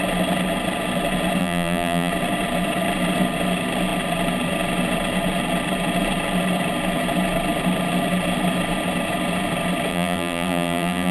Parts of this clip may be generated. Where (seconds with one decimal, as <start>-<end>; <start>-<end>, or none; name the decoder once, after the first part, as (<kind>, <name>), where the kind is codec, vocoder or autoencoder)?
1.4-2.1 (vocoder, BigVGAN v2); 9.9-11.1